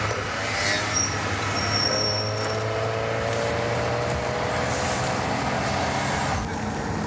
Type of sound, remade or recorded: recorded